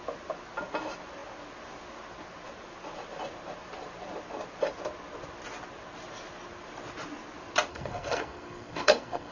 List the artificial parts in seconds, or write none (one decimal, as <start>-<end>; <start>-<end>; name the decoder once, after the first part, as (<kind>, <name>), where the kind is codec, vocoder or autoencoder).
7.7-9.3 (codec, SNAC)